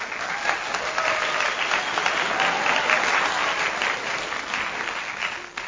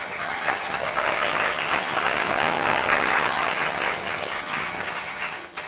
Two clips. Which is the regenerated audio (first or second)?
second